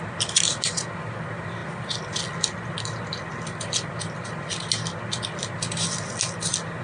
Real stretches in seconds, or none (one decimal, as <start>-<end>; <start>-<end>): 0.0-6.8